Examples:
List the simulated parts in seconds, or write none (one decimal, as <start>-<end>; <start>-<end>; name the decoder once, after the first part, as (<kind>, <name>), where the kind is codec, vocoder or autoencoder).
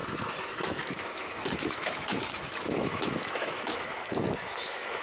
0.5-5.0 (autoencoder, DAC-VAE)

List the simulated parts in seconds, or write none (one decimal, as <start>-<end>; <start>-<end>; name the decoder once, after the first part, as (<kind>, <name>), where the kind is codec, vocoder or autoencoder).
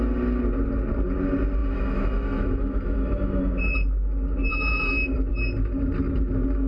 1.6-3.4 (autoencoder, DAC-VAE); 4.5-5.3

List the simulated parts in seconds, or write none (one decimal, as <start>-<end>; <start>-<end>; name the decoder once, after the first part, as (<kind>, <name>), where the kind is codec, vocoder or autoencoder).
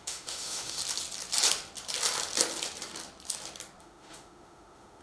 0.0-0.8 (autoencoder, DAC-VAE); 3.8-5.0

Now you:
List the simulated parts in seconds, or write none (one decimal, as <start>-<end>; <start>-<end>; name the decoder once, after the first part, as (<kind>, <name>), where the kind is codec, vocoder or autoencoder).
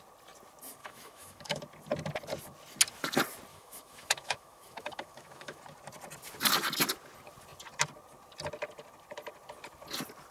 0.8-1.6 (autoencoder, DAC-VAE); 3.5-5.6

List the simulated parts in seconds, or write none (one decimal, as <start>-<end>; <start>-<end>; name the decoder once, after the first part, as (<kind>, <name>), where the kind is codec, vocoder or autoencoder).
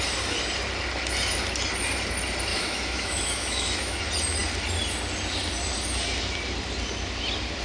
2.5-4.0 (autoencoder, DAC-VAE)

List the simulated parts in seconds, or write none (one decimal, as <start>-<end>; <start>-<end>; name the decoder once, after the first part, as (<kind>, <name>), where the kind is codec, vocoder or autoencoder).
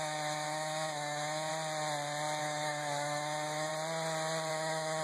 0.0-1.5 (autoencoder, DAC-VAE); 2.4-3.7; 4.5-5.0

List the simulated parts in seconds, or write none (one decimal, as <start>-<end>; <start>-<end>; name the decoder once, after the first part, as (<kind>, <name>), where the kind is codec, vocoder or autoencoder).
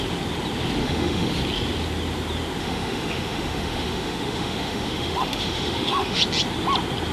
0.8-1.4 (autoencoder, DAC-VAE); 2.6-6.2